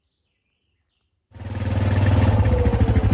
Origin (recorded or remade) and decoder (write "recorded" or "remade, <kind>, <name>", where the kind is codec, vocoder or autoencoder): recorded